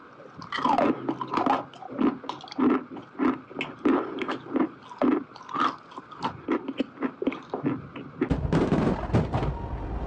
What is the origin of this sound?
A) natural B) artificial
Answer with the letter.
A